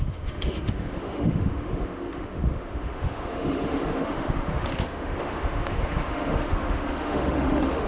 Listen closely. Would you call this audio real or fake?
fake